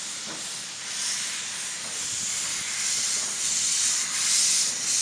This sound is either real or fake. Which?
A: fake